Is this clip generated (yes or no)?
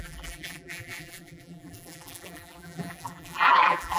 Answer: yes